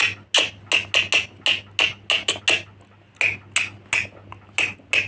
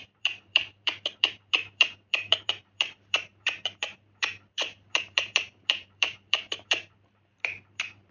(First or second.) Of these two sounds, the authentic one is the first